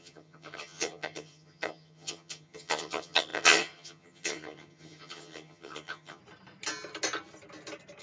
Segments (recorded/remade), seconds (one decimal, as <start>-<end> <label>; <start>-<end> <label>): 0.0-6.2 remade; 6.2-8.0 recorded